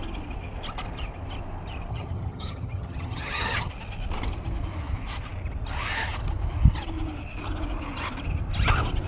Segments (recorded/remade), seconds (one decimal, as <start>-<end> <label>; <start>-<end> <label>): 0.0-1.9 recorded; 1.9-3.7 remade; 3.7-9.1 recorded